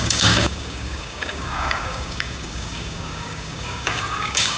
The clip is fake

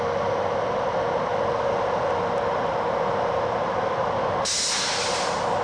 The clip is real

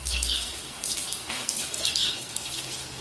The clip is fake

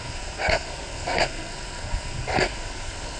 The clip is fake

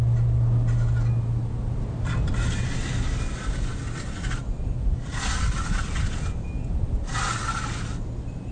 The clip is real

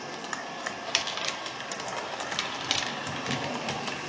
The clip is fake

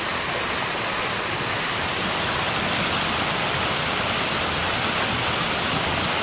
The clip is real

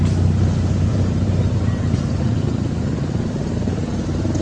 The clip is fake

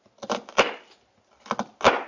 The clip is real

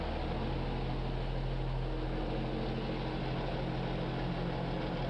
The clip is real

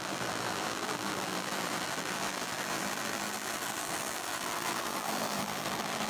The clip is fake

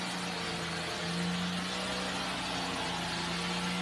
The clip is real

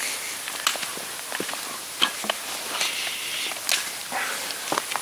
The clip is real